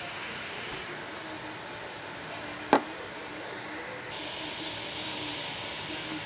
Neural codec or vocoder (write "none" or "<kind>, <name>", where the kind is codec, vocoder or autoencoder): none